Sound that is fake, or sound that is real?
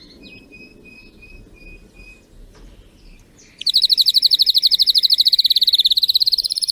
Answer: real